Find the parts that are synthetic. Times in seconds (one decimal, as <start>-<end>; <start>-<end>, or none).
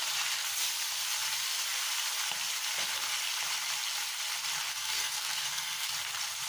4.7-5.9